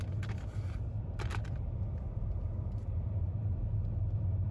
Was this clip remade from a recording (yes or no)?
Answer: no